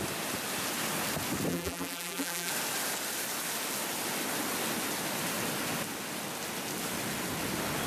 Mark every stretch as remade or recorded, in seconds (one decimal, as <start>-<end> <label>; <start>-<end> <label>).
0.0-1.5 recorded; 1.5-2.5 remade; 2.5-7.9 recorded